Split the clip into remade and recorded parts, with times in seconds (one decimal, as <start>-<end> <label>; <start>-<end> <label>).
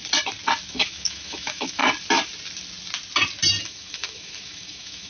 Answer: 0.0-0.7 recorded; 0.7-1.8 remade; 1.8-3.6 recorded; 3.6-5.1 remade